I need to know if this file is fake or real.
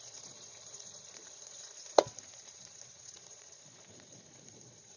fake